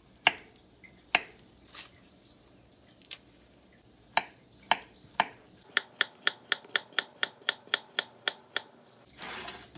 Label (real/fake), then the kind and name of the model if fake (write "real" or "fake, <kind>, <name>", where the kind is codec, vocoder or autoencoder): real